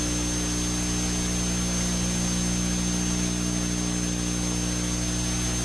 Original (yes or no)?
yes